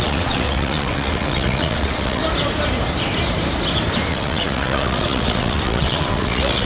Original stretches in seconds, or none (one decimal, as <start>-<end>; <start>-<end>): 2.2-4.1